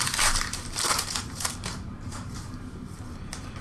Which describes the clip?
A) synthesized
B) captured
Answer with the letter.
A